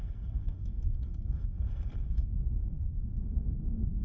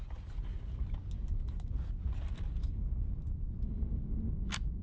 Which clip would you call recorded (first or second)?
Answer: second